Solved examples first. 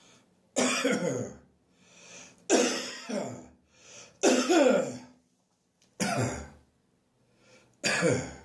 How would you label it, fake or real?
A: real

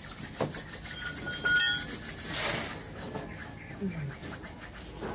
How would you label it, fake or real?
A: real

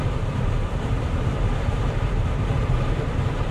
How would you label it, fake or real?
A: fake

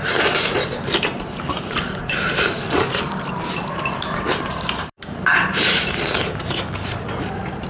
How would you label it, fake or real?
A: fake